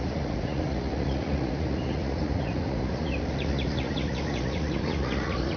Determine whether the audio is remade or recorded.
remade